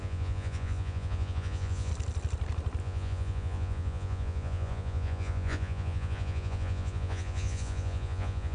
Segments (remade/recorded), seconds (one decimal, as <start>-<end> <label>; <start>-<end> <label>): 0.0-1.9 remade; 1.9-2.8 recorded; 2.8-8.5 remade